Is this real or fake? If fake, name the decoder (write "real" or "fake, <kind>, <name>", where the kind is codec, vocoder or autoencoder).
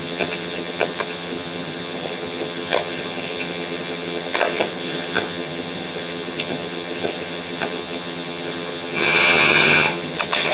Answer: fake, vocoder, HiFi-GAN